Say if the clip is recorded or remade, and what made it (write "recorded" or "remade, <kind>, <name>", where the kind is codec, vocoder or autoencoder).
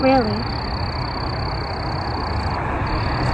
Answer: recorded